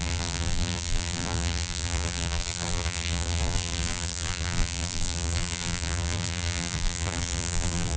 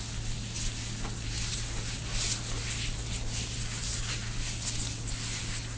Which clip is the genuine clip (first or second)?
second